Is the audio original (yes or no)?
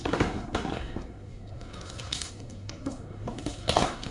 no